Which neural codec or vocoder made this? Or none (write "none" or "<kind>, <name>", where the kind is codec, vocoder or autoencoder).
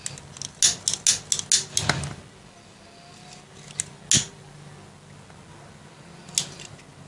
none